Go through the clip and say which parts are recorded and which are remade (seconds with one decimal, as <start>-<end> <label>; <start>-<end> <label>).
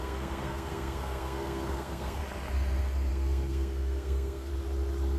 0.0-2.2 remade; 2.2-3.1 recorded; 3.1-4.5 remade; 4.5-5.2 recorded